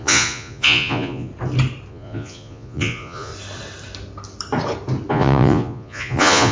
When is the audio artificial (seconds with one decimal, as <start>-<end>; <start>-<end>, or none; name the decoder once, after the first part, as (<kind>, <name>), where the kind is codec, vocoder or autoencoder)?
0.0-1.3 (vocoder, Vocos); 1.9-3.3; 5.1-6.5